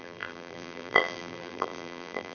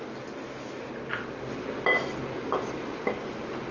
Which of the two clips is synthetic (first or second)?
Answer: first